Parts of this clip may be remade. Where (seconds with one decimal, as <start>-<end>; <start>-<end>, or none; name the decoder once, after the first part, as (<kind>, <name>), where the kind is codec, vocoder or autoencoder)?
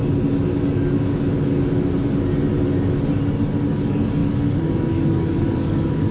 3.7-6.1 (codec, DAC)